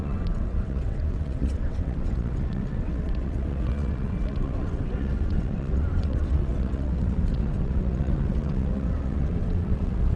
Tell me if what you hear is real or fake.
fake